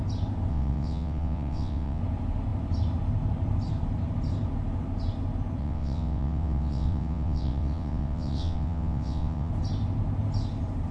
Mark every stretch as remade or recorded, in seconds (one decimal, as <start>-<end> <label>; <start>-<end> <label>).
0.0-0.5 recorded; 0.5-2.0 remade; 2.0-5.6 recorded; 5.6-9.5 remade; 9.5-10.9 recorded